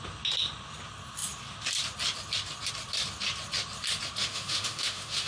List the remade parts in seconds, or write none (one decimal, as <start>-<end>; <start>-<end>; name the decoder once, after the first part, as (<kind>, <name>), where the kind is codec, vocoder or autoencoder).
4.2-5.3 (autoencoder, DAC-VAE)